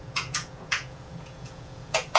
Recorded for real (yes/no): no